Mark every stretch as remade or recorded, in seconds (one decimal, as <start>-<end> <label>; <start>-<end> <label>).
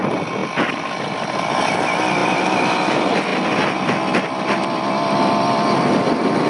0.0-2.2 recorded; 2.2-2.9 remade; 2.9-6.5 recorded